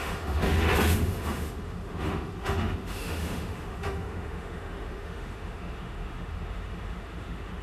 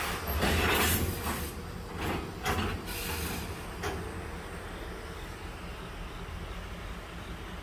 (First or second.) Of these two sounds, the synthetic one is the first